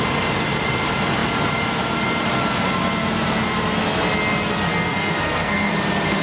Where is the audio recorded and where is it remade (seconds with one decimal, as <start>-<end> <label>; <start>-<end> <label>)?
0.0-4.7 recorded; 4.7-5.7 remade; 5.7-6.2 recorded